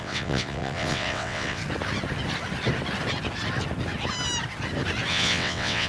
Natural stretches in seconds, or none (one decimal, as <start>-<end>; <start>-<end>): 1.6-5.1